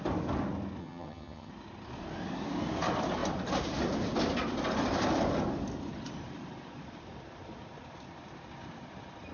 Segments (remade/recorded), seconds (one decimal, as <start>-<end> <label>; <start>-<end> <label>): 0.0-0.8 recorded; 0.8-1.5 remade; 1.5-9.3 recorded